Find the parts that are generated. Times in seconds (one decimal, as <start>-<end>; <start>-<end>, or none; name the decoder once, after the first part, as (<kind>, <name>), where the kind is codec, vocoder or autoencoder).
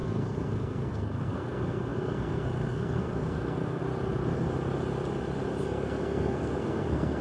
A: 0.0-3.8 (codec, SNAC); 5.6-7.2